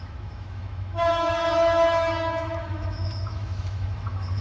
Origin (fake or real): fake